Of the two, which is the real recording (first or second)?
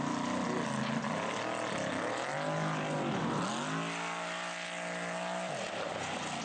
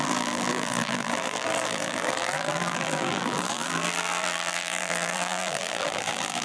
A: first